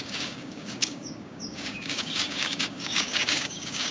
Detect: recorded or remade remade